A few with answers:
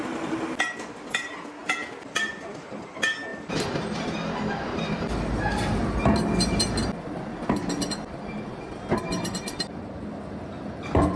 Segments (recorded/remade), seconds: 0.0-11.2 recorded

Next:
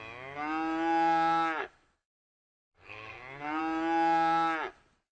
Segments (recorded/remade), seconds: 0.0-1.6 recorded; 1.6-3.6 remade; 3.6-5.2 recorded

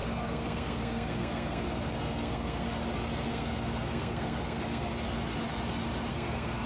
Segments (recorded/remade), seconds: 0.0-2.8 remade; 2.8-3.3 recorded; 3.3-4.9 remade; 4.9-6.1 recorded; 6.1-6.7 remade

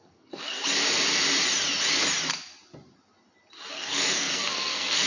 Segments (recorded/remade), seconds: 0.0-0.6 remade; 0.6-3.7 recorded; 3.7-5.1 remade

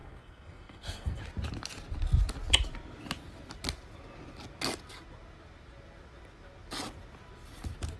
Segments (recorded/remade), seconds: 0.0-1.2 remade; 1.2-8.0 recorded

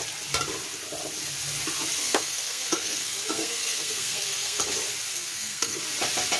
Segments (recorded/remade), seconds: 0.0-2.0 recorded; 2.0-4.6 remade; 4.6-5.1 recorded; 5.1-5.8 remade; 5.8-6.4 recorded

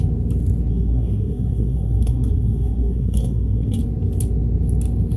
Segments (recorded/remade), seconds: 0.0-0.7 recorded; 0.7-3.8 remade; 3.8-5.2 recorded

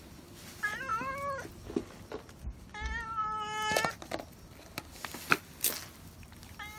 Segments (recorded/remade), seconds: 0.0-6.8 recorded